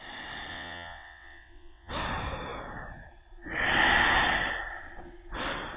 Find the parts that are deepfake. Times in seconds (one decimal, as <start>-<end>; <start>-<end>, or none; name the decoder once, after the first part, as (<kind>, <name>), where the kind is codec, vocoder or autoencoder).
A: 0.5-1.9 (vocoder, WaveNeXt)